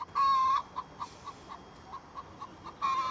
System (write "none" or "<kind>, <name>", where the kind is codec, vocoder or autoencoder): none